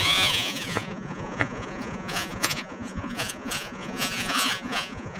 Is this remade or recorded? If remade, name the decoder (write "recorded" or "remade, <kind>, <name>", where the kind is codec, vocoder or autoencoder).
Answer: remade, vocoder, Vocos